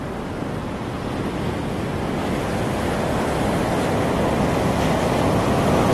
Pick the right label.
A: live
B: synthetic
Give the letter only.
A